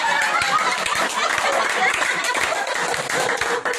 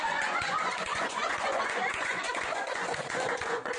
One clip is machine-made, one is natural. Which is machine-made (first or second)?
second